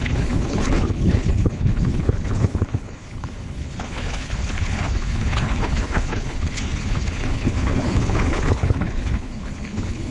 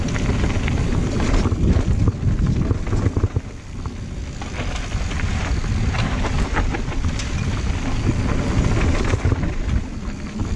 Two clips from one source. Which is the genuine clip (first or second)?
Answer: second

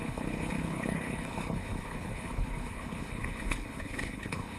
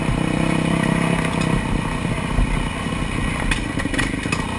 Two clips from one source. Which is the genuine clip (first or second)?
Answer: second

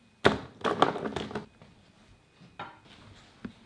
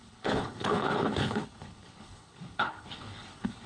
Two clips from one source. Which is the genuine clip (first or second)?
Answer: first